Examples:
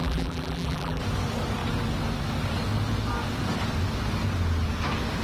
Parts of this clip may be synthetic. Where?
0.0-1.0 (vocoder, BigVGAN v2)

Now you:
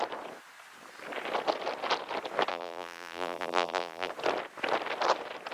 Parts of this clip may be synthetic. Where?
2.5-4.1 (vocoder, BigVGAN v2)

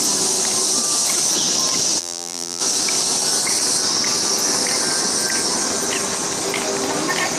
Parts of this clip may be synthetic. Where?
2.0-2.6 (vocoder, BigVGAN v2)

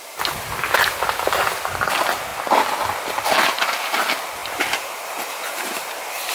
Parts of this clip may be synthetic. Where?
4.4-6.3 (vocoder, BigVGAN v2)